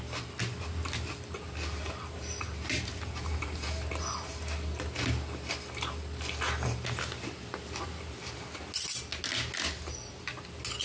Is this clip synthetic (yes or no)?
no